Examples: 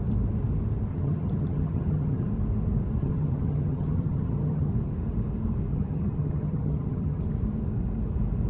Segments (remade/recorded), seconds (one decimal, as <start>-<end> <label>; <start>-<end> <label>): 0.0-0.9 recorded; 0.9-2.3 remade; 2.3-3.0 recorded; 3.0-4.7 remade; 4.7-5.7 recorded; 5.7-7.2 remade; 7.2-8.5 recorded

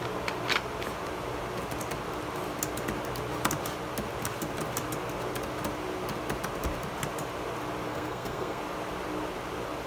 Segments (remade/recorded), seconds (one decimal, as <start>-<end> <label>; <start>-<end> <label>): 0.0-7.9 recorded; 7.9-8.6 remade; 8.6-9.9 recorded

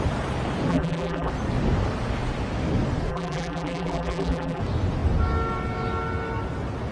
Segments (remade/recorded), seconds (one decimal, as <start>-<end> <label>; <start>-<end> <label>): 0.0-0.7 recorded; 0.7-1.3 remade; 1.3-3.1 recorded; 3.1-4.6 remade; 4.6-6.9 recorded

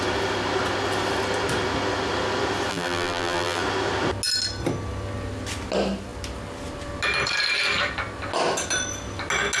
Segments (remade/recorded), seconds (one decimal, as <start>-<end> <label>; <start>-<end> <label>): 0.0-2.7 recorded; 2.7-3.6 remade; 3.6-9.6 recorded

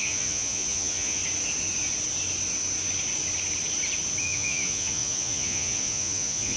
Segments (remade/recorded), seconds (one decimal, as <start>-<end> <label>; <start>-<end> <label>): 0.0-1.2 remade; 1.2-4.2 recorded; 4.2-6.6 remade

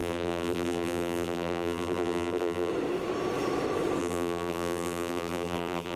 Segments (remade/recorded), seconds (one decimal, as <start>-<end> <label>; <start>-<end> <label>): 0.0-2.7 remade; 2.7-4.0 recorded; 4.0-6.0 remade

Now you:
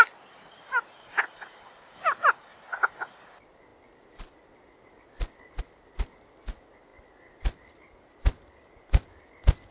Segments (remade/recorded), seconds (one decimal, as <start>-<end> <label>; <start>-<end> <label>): 0.0-9.7 recorded